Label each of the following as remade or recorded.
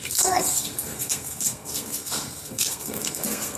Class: remade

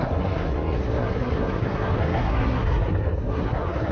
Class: remade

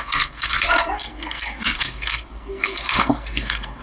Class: remade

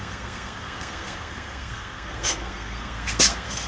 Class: remade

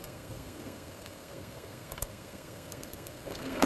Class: remade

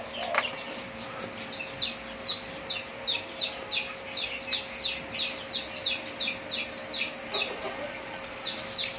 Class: recorded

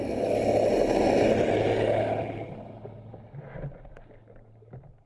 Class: recorded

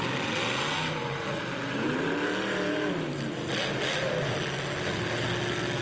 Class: recorded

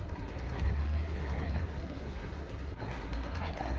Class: remade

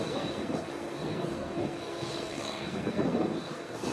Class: remade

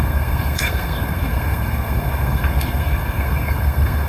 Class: remade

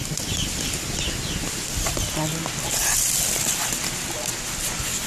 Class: recorded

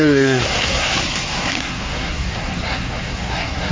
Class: remade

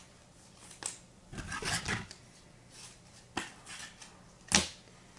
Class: recorded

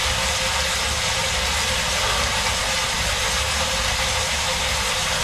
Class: recorded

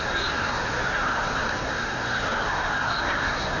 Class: remade